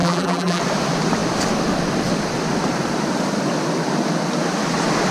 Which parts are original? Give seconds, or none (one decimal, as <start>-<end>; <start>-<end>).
0.6-5.1